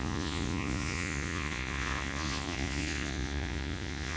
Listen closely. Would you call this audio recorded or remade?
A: remade